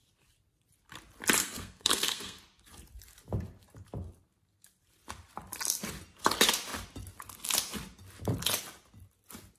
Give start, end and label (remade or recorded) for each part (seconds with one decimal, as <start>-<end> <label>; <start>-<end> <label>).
0.0-1.4 recorded; 1.4-2.4 remade; 2.4-9.6 recorded

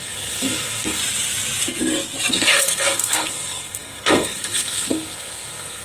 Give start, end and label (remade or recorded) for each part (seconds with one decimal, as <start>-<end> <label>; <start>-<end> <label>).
0.0-1.0 remade; 1.0-2.3 recorded; 2.3-5.8 remade

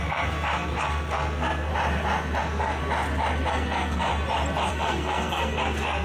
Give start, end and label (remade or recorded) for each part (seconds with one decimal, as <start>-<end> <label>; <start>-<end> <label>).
0.0-1.7 remade; 1.7-2.4 recorded; 2.4-2.8 remade; 2.8-3.5 recorded; 3.5-4.1 remade; 4.1-4.7 recorded; 4.7-6.0 remade

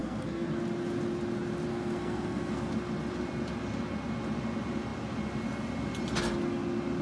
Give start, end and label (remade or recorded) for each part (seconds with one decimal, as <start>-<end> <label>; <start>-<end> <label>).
0.0-0.6 remade; 0.6-1.7 recorded; 1.7-2.7 remade; 2.7-7.0 recorded

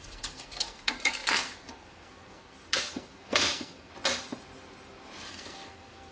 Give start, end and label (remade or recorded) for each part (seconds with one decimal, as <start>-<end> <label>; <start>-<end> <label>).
0.0-3.9 remade; 3.9-5.3 recorded; 5.3-6.1 remade

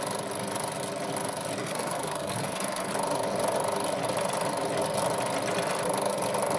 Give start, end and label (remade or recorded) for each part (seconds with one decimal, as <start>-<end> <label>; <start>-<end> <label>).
0.0-1.6 recorded; 1.6-2.9 remade; 2.9-6.6 recorded